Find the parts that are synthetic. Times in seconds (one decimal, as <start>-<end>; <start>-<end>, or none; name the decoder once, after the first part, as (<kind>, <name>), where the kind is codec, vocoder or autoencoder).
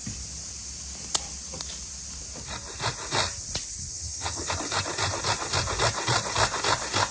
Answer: 3.9-4.5 (vocoder, HiFi-GAN)